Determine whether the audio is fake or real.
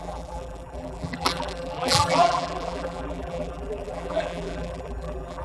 fake